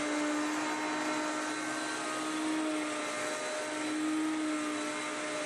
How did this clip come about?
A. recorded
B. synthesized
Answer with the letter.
A